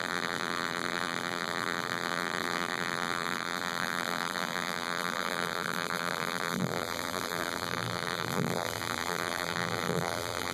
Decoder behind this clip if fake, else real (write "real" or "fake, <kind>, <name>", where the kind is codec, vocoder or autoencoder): fake, vocoder, BigVGAN v2